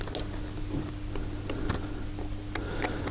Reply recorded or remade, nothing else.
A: recorded